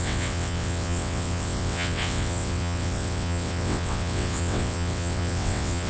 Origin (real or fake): fake